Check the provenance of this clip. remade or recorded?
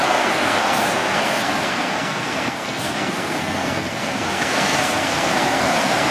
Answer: remade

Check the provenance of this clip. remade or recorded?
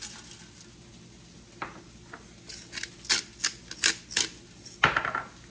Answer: recorded